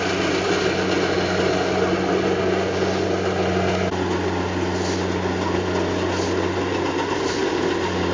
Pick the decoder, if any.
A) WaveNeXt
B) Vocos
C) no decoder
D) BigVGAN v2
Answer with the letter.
C